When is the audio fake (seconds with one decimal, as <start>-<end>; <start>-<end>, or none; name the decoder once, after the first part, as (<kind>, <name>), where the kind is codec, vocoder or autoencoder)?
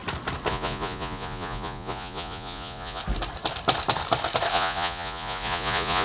0.5-3.0 (vocoder, Vocos); 4.5-6.0